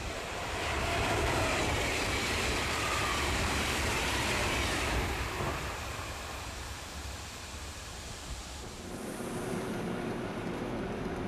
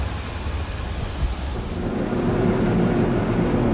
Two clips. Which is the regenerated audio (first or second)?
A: first